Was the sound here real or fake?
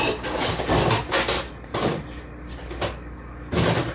real